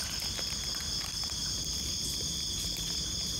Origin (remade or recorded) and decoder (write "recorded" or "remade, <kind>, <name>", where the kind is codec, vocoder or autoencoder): recorded